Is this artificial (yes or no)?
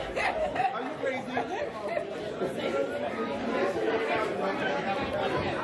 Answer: no